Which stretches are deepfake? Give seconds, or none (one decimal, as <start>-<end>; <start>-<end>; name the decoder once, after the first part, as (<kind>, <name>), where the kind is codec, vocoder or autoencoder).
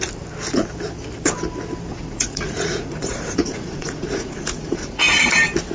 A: 1.9-5.3 (vocoder, Vocos)